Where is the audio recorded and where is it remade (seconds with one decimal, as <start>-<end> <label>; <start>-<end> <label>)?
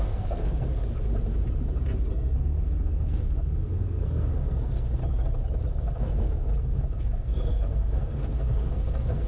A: 0.0-0.8 remade; 0.8-2.1 recorded; 2.1-5.0 remade; 5.0-5.6 recorded; 5.6-9.3 remade